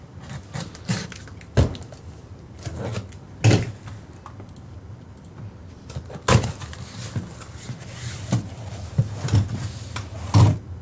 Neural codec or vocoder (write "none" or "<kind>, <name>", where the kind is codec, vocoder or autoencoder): none